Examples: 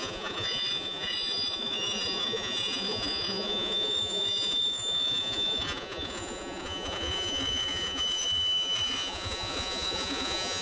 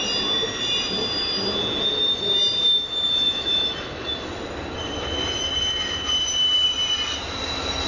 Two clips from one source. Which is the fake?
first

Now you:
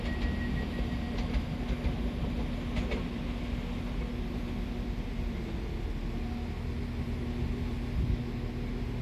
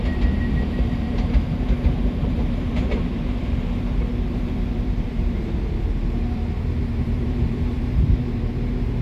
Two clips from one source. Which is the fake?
second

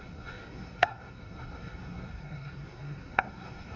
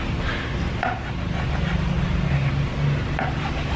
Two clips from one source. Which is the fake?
first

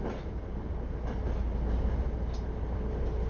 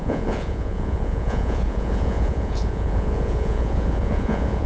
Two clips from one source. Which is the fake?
second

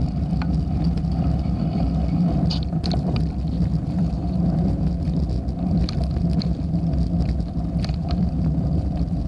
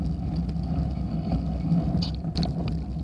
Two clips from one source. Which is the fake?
first